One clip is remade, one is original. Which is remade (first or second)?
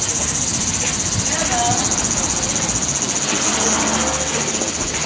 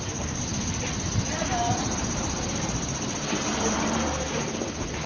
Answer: second